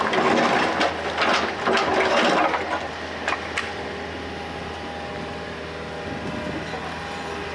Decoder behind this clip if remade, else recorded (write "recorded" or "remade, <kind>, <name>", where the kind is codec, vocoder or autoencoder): recorded